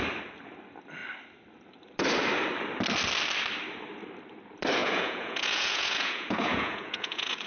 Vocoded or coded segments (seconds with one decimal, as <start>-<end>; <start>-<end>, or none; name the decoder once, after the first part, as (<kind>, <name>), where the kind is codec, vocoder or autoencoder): 4.8-7.5 (vocoder, Vocos)